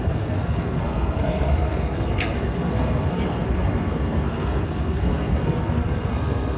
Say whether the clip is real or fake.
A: fake